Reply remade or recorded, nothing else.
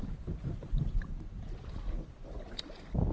recorded